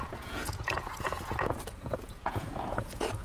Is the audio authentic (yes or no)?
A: no